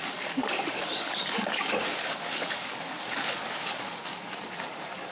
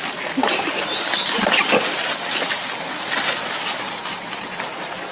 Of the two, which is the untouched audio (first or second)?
second